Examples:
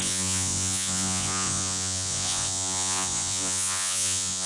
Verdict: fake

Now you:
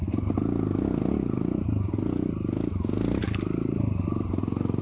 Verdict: real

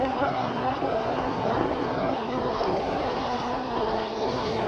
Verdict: fake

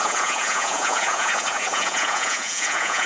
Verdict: fake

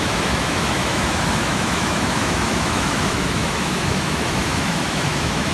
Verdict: fake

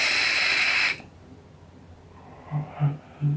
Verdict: real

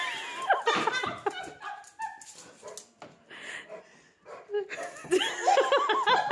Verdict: real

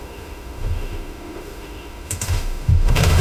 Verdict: fake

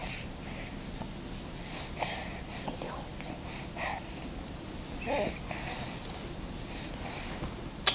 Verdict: real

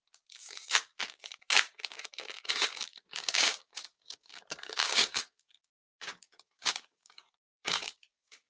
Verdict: fake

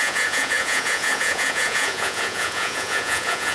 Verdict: fake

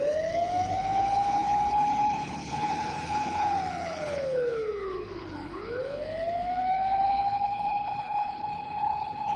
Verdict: fake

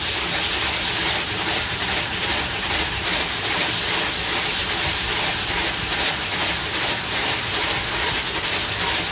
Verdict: real